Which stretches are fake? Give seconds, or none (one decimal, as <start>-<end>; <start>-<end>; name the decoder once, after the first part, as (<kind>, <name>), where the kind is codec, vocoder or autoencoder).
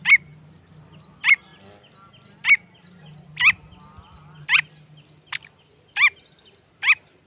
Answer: none